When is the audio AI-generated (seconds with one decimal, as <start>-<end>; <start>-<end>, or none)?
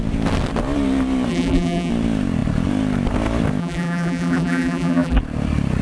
1.3-1.9; 3.6-5.2